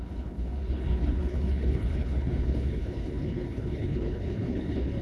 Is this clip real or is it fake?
fake